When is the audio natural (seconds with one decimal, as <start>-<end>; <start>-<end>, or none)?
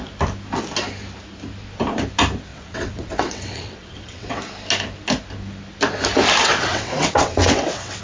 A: 0.0-2.5; 4.4-6.4